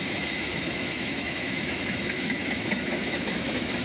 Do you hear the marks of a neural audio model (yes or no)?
yes